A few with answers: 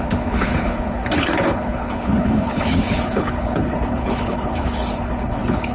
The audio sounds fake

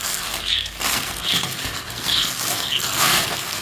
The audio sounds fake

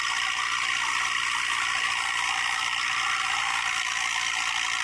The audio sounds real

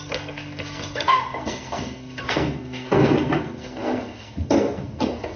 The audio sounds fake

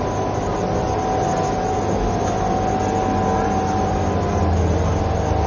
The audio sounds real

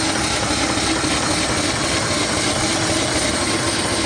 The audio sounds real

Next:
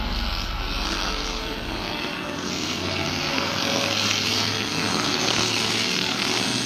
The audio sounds fake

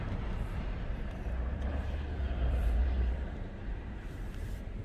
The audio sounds fake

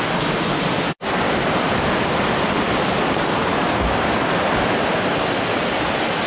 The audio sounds real